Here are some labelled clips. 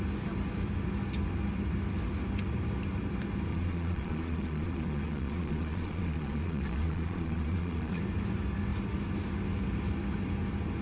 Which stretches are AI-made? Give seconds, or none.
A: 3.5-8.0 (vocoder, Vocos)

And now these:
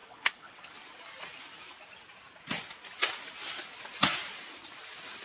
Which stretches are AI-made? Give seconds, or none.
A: 0.0-0.8 (codec, HILCodec)

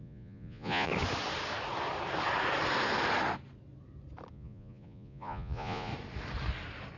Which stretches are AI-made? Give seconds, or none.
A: 0.0-0.9 (vocoder, Vocos); 4.3-5.9